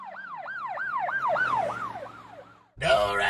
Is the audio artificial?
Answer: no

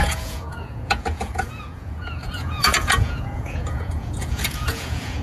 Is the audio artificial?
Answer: yes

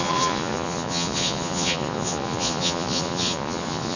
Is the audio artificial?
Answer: yes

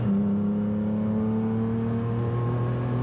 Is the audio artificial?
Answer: no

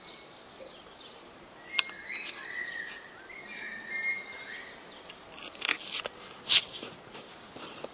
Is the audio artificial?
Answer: no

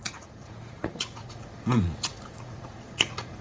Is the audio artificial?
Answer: yes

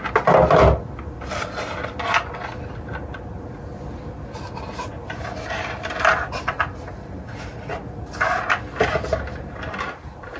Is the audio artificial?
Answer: no